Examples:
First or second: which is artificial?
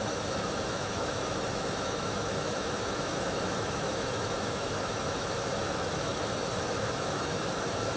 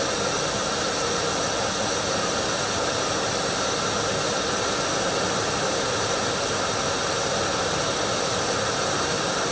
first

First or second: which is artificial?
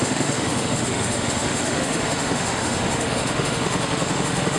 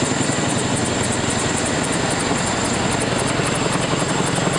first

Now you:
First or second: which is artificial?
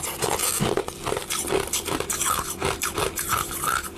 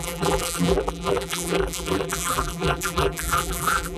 second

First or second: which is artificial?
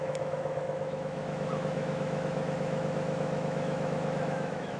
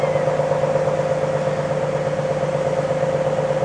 first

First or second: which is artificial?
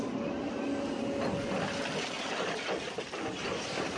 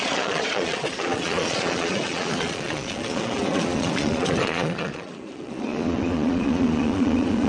second